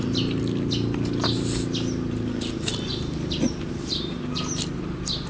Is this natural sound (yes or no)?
yes